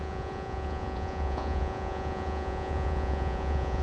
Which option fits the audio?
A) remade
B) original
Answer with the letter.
A